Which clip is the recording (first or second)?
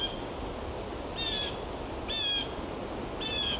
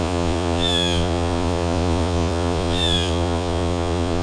first